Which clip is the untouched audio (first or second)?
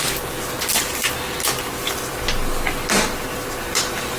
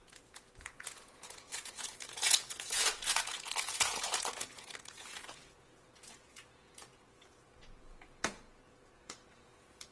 first